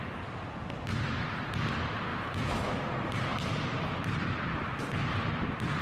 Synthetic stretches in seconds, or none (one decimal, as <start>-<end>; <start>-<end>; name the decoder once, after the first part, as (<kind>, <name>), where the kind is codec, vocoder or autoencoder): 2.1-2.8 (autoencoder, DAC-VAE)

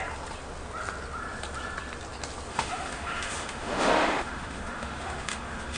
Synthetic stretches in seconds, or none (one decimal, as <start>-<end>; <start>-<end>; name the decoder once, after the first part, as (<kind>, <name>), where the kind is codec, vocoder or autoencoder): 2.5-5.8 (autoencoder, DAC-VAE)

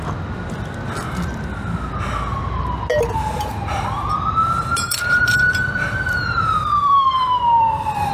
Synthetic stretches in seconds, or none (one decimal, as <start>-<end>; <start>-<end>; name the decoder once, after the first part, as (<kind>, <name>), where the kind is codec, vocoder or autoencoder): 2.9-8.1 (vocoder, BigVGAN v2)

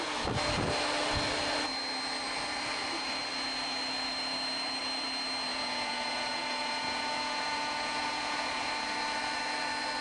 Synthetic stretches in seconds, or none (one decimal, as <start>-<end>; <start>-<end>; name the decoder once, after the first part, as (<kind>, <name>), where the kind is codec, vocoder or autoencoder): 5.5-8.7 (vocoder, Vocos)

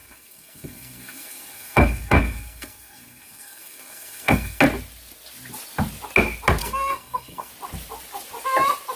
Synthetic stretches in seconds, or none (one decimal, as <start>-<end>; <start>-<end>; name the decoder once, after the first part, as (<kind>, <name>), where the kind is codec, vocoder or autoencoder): 0.0-4.6 (codec, SNAC); 6.6-7.5